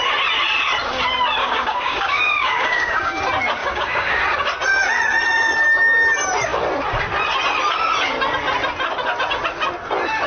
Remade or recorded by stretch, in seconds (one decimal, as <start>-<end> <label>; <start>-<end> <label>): 0.0-1.4 recorded; 1.4-3.2 remade; 3.2-3.6 recorded; 3.6-4.2 remade; 4.2-10.3 recorded

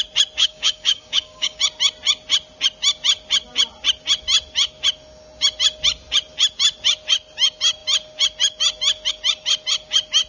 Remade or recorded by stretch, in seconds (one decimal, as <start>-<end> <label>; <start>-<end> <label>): 0.0-0.4 recorded; 0.4-1.6 remade; 1.6-10.3 recorded

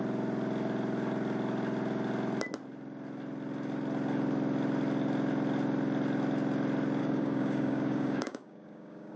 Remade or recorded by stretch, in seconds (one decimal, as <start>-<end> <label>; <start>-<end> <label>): 0.0-7.0 recorded; 7.0-9.2 remade

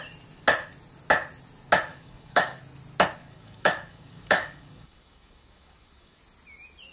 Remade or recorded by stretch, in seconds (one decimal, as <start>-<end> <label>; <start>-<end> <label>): 0.0-1.9 recorded; 1.9-2.6 remade; 2.6-3.2 recorded; 3.2-6.2 remade; 6.2-6.9 recorded

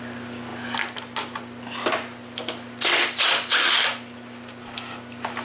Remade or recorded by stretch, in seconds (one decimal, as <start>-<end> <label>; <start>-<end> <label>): 0.0-5.4 recorded

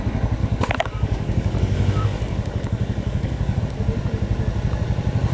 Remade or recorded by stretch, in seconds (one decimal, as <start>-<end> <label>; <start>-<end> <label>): 0.0-0.4 recorded; 0.4-3.6 remade; 3.6-5.3 recorded